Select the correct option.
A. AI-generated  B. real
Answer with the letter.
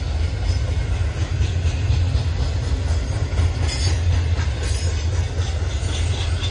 B